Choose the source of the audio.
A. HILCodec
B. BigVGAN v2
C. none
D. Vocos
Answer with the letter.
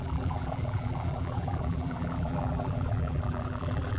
B